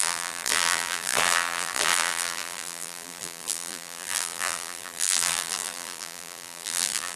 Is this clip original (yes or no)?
no